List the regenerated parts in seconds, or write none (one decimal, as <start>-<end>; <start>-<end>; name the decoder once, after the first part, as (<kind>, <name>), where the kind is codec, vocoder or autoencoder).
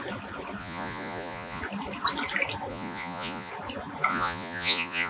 0.6-1.6 (vocoder, Vocos); 2.7-3.5; 4.1-5.1